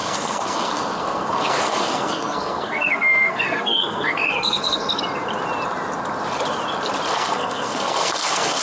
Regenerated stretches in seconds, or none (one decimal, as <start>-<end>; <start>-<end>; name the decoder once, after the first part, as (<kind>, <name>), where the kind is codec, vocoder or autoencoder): 0.0-5.0 (codec, SNAC); 7.1-8.6